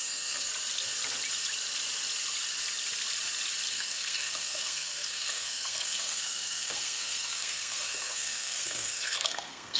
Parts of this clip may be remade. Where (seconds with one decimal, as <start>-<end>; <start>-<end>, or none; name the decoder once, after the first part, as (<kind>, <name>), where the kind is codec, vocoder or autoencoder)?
0.0-0.5 (codec, SNAC); 3.7-9.8